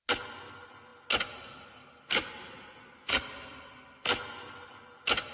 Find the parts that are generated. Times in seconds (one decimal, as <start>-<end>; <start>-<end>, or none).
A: none